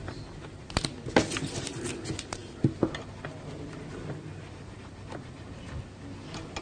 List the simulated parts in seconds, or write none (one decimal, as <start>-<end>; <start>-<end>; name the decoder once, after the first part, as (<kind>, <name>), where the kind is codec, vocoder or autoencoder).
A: none